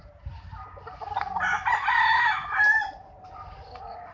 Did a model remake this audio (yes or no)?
no